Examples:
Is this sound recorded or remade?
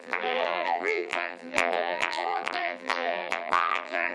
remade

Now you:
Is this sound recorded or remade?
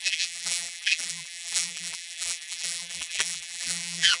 remade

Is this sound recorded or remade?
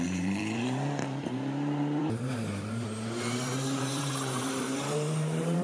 remade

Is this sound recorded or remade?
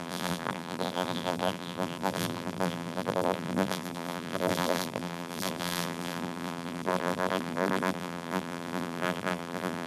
remade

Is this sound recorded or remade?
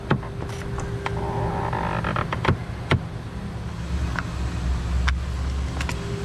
recorded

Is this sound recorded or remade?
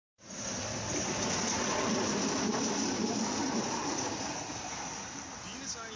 recorded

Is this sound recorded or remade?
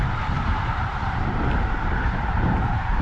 remade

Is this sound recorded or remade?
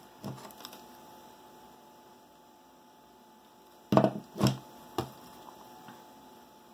recorded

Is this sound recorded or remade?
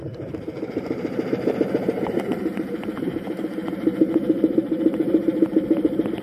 remade